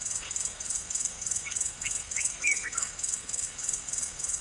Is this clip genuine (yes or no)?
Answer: no